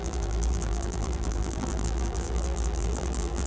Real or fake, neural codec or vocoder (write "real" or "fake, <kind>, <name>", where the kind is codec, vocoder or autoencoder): fake, vocoder, BigVGAN v2